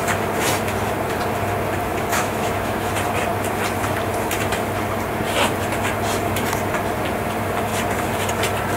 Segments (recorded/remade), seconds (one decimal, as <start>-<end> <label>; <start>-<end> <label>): 0.0-2.1 recorded; 2.1-2.9 remade; 2.9-8.8 recorded